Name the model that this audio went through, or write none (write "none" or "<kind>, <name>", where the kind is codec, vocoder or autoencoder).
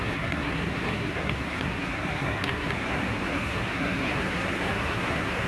codec, SNAC